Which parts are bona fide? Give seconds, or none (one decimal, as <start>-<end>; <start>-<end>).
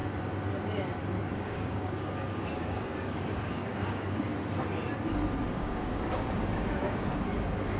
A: 0.0-1.2; 4.3-5.5